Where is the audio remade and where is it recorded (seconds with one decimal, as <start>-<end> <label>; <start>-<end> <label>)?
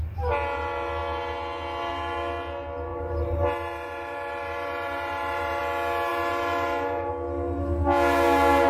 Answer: 0.0-2.9 recorded; 2.9-5.6 remade; 5.6-6.1 recorded; 6.1-7.1 remade; 7.1-8.7 recorded